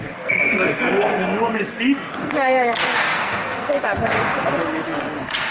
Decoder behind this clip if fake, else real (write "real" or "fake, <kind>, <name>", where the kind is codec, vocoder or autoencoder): fake, codec, SNAC